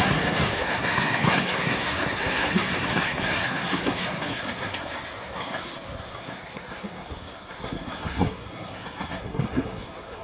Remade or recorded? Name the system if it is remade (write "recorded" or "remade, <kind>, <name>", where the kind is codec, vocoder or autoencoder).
remade, codec, SNAC